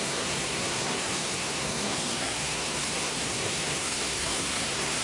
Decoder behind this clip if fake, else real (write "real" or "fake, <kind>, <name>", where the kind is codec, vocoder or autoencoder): fake, codec, SNAC